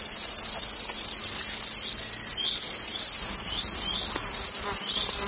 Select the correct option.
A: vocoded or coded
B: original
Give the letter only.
B